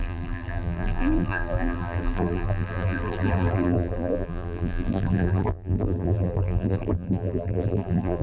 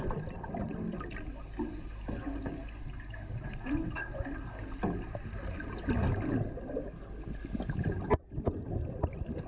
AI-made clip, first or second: first